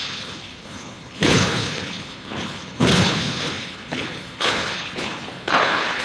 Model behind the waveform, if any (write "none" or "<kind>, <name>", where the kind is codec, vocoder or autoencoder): codec, HILCodec